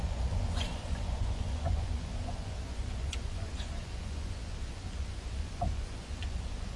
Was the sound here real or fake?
fake